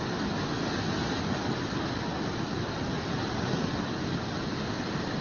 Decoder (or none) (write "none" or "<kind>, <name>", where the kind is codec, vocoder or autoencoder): none